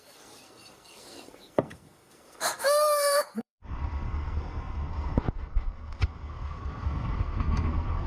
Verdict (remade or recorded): remade